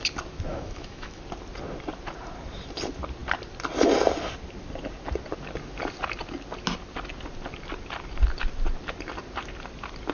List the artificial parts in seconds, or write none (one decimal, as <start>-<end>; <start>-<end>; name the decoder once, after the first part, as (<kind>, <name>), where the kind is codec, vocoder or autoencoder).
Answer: 0.5-1.2 (autoencoder, DAC-VAE)